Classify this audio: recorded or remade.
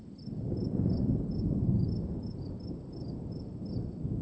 recorded